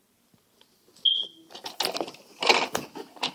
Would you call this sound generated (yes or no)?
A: no